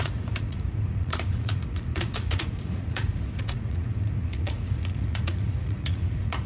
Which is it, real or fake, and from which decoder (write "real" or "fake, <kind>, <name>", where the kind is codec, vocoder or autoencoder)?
fake, vocoder, Vocos